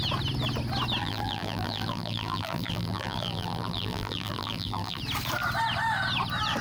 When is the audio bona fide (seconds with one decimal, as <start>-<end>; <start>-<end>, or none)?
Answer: 0.0-1.0; 5.0-6.6